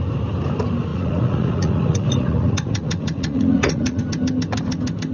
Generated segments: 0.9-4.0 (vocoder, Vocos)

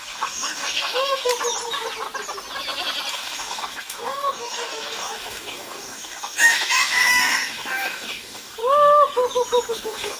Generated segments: 0.0-1.3 (codec, DAC); 3.1-8.6; 9.7-10.2

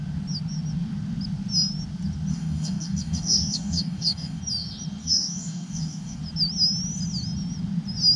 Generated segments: 2.3-4.4 (codec, DAC); 5.0-6.2

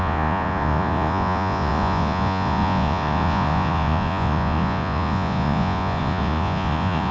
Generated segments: 0.0-7.1 (vocoder, Vocos)

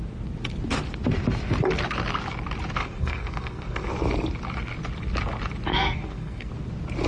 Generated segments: 2.8-3.9 (codec, SNAC); 5.7-6.5

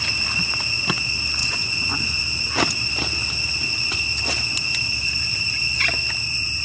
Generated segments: 1.4-2.2 (vocoder, Vocos)